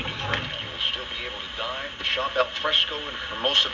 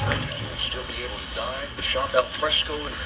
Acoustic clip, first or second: first